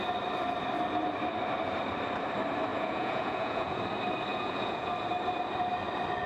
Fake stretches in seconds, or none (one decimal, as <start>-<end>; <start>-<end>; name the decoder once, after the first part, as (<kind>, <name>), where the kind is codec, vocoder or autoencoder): 2.7-3.8 (vocoder, Vocos); 4.3-4.9